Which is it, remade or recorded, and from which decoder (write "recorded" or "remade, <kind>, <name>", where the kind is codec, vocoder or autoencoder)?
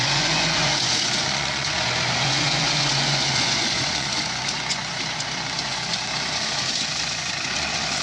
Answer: remade, vocoder, Vocos